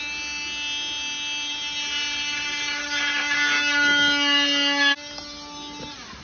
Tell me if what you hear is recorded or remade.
recorded